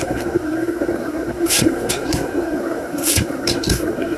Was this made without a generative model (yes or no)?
no